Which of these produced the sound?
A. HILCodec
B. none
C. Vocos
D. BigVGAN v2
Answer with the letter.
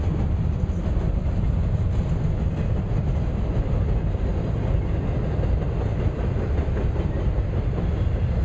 B